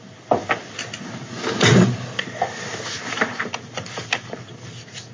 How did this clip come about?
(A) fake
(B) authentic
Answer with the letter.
B